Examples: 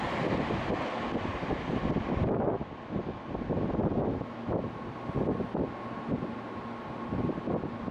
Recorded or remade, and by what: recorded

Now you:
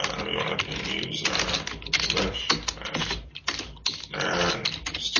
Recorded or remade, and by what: recorded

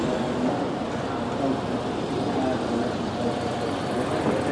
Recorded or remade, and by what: recorded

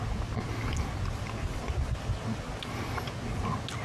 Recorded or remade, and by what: recorded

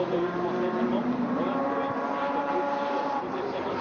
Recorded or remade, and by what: remade, vocoder, BigVGAN v2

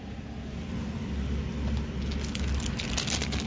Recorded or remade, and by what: recorded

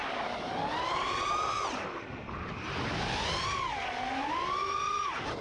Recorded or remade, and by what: recorded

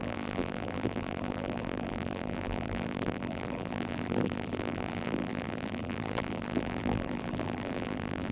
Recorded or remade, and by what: remade, vocoder, BigVGAN v2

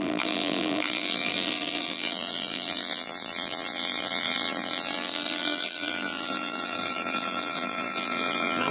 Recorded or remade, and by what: remade, vocoder, BigVGAN v2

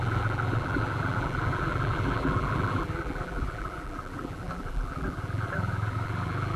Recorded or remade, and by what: remade, vocoder, BigVGAN v2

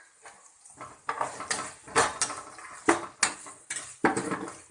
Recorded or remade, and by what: recorded